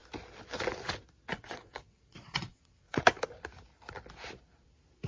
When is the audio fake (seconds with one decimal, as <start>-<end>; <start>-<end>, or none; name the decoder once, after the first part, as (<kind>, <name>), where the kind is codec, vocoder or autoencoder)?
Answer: 1.3-3.0 (vocoder, WaveNeXt)